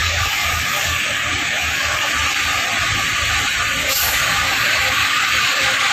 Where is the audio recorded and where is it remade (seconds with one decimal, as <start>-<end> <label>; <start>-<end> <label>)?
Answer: 0.0-2.1 remade; 2.1-3.8 recorded; 3.8-5.9 remade